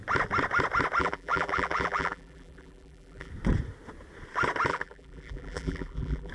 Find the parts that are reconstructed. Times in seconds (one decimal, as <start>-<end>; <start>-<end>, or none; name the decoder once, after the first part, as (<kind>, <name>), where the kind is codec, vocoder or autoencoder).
1.0-3.3 (vocoder, BigVGAN v2); 4.7-6.3